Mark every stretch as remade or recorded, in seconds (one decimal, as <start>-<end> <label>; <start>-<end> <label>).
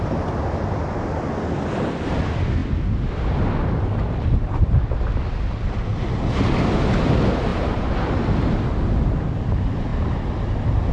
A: 0.0-10.9 recorded